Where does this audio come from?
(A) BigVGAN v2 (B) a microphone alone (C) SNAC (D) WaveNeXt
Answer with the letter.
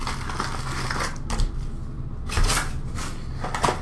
B